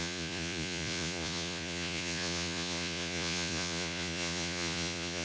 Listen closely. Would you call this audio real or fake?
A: fake